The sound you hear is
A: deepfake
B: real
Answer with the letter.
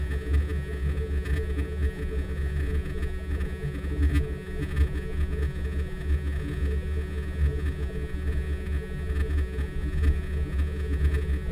A